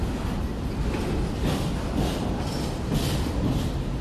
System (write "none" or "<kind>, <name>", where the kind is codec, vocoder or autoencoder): vocoder, BigVGAN v2